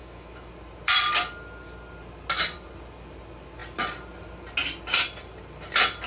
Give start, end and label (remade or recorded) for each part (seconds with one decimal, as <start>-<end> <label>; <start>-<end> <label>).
0.0-0.5 remade; 0.5-6.1 recorded